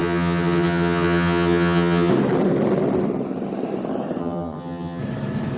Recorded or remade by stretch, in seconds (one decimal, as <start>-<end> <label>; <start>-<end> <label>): 0.0-2.1 remade; 2.1-4.2 recorded; 4.2-5.0 remade; 5.0-5.6 recorded